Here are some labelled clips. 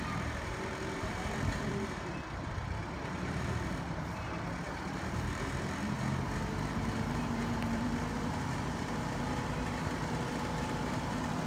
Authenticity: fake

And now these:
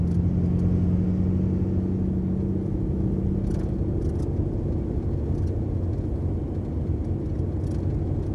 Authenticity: real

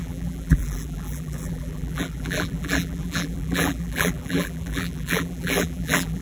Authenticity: fake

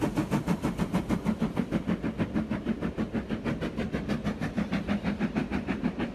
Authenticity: real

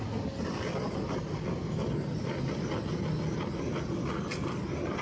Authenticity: real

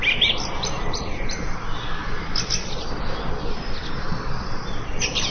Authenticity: real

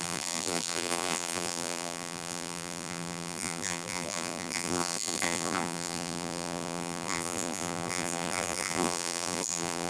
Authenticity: fake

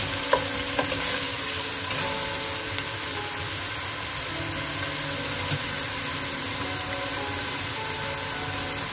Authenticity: real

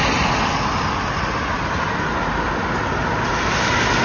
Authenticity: real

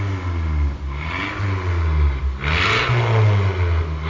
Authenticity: real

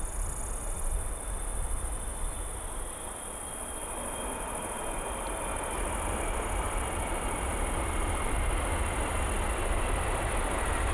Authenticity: real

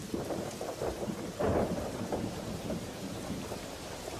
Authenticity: fake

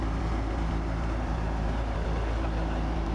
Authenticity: real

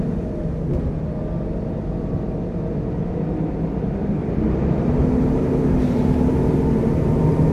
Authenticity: real